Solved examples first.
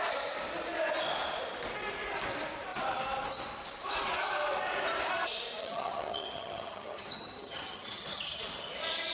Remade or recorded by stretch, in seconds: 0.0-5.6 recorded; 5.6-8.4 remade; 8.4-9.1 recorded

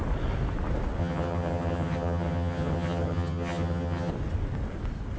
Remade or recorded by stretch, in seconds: 0.0-1.0 recorded; 1.0-4.1 remade; 4.1-5.2 recorded

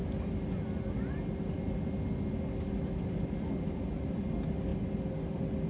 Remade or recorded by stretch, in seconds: 0.0-5.7 recorded

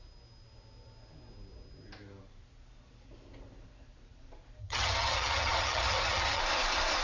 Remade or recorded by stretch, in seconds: 0.0-4.6 recorded; 4.6-6.4 remade; 6.4-7.0 recorded